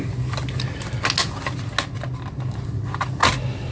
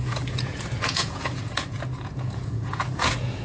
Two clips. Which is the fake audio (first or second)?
second